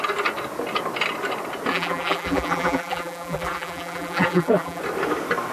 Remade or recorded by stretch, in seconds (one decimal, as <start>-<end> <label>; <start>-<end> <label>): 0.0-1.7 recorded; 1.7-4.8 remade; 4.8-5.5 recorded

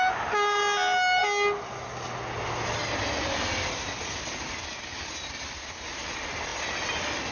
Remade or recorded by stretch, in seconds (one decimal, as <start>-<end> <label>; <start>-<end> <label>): 0.0-7.3 recorded

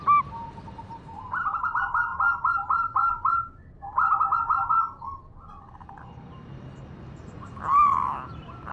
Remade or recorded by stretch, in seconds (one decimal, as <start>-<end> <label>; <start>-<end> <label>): 0.0-2.1 remade; 2.1-4.7 recorded; 4.7-8.7 remade

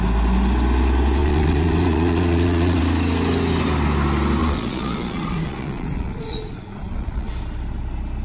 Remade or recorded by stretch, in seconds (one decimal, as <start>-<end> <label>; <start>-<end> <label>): 0.0-1.2 recorded; 1.2-2.8 remade; 2.8-4.4 recorded; 4.4-7.3 remade; 7.3-8.2 recorded

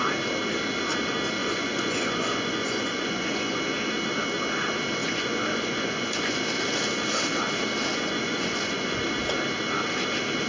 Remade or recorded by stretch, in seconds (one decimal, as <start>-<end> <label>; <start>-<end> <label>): 0.0-1.4 recorded; 1.4-3.6 remade; 3.6-5.0 recorded; 5.0-6.4 remade; 6.4-7.9 recorded; 7.9-9.0 remade; 9.0-10.5 recorded

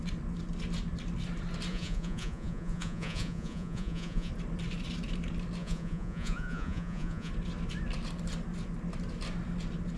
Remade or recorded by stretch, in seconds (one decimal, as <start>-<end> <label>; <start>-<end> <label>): 0.0-1.7 recorded; 1.7-4.3 remade; 4.3-5.6 recorded; 5.6-7.3 remade; 7.3-10.0 recorded